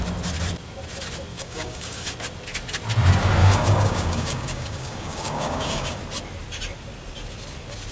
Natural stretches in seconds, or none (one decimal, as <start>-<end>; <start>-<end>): 0.0-1.3; 2.1-3.4; 6.0-7.9